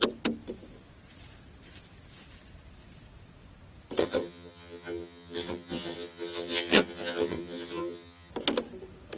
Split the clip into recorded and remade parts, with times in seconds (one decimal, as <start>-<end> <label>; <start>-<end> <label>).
0.0-4.0 recorded; 4.0-8.3 remade; 8.3-9.2 recorded

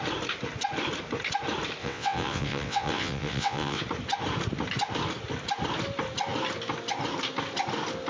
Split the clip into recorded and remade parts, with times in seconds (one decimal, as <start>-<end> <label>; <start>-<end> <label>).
0.0-1.8 recorded; 1.8-3.8 remade; 3.8-8.1 recorded

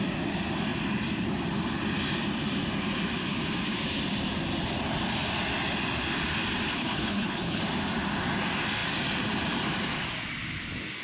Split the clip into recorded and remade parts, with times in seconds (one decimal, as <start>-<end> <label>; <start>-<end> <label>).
0.0-6.7 recorded; 6.7-7.6 remade; 7.6-11.0 recorded

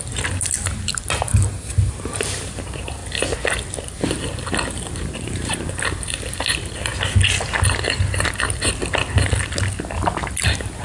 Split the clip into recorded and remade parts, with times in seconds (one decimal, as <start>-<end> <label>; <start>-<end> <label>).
0.0-3.0 remade; 3.0-3.8 recorded; 3.8-6.9 remade; 6.9-10.4 recorded; 10.4-10.8 remade

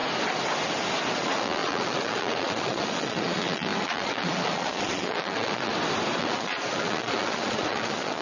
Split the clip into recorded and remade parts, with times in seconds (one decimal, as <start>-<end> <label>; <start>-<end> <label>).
0.0-1.1 recorded; 1.1-5.7 remade; 5.7-6.2 recorded; 6.2-8.2 remade

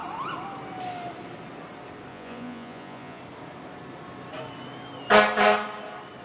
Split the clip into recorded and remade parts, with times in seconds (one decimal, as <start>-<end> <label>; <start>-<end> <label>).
0.0-2.1 recorded; 2.1-3.2 remade; 3.2-6.2 recorded

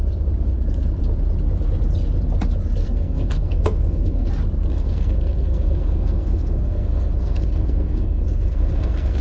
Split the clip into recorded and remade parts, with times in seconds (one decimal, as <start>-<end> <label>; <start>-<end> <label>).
0.0-2.8 recorded; 2.8-4.3 remade; 4.3-4.7 recorded; 4.7-9.2 remade

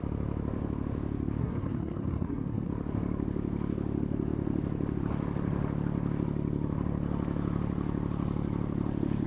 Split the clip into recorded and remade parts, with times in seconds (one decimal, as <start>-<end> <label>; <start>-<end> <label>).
0.0-1.4 recorded; 1.4-2.7 remade; 2.7-9.3 recorded